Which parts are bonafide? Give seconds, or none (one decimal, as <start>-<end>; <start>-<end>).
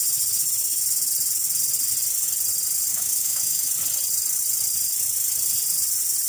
0.0-2.9; 3.7-6.3